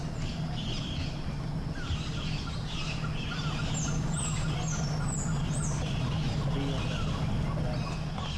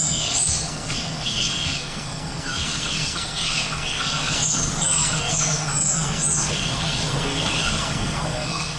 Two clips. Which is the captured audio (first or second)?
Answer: first